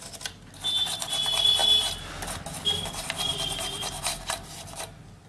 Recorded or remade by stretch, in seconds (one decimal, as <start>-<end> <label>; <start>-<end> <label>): 0.0-1.6 recorded; 1.6-4.8 remade; 4.8-5.3 recorded